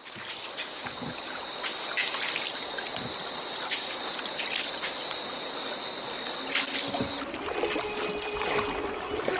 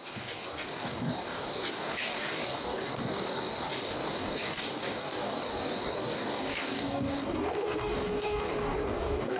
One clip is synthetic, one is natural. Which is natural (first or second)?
first